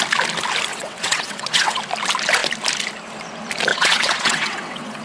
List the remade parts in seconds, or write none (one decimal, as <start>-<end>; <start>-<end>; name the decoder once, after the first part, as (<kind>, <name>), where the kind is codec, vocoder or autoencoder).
0.7-1.8 (vocoder, WaveNeXt); 3.7-5.0